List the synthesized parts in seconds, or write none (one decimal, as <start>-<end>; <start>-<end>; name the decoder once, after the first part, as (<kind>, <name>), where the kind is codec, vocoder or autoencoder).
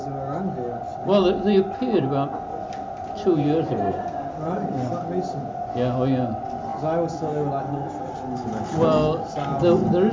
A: none